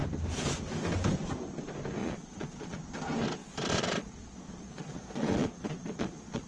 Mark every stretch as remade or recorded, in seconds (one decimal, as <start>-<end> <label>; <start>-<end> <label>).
0.0-2.0 recorded; 2.0-2.8 remade; 2.8-3.4 recorded; 3.4-6.5 remade